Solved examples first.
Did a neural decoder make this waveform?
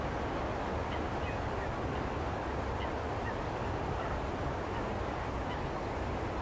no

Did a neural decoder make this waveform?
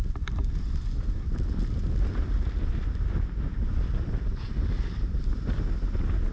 no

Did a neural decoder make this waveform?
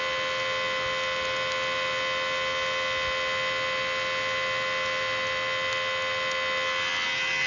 no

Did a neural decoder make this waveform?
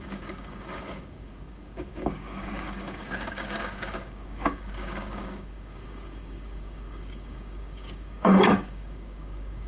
yes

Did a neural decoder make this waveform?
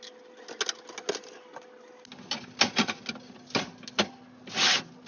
no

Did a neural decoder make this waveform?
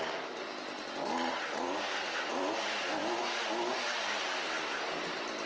no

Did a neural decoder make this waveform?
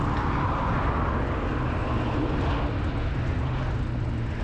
no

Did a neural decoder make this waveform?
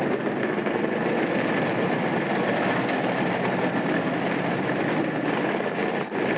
no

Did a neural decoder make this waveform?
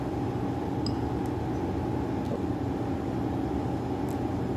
no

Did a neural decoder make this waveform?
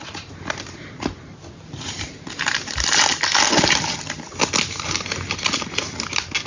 no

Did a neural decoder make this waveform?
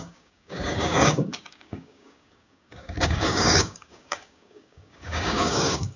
yes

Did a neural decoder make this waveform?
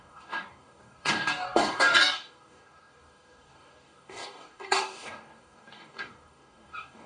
yes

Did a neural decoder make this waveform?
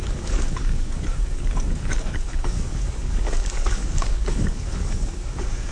yes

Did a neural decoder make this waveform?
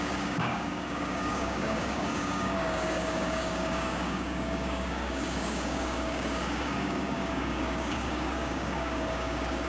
yes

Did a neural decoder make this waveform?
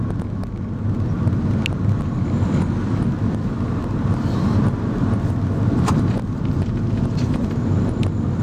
no